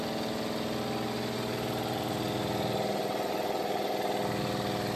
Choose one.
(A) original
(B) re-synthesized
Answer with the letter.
A